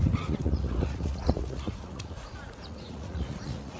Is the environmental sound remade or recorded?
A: remade